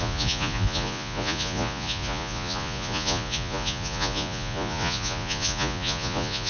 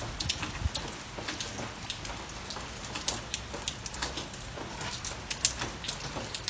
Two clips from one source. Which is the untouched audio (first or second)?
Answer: second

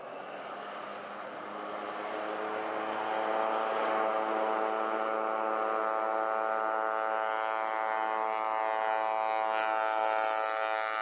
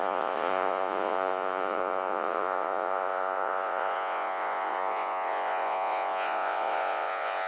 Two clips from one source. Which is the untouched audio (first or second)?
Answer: first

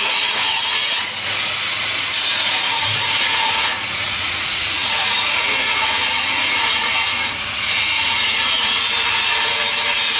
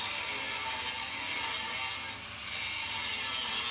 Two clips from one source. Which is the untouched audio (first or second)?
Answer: second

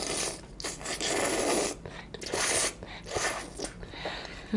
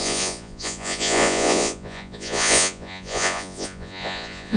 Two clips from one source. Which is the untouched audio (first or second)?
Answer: first